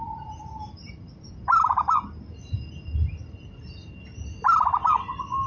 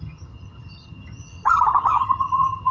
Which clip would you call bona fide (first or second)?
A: first